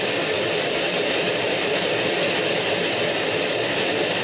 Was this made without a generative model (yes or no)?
no